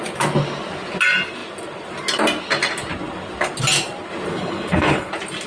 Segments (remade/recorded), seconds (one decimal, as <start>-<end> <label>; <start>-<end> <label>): 0.0-4.3 recorded; 4.3-5.1 remade; 5.1-5.5 recorded